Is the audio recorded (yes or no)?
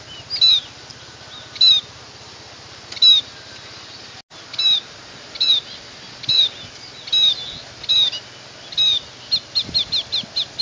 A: yes